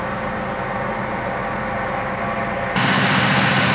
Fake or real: real